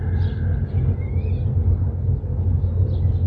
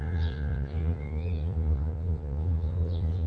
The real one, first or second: first